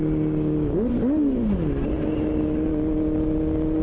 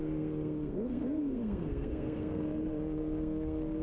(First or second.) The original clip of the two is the first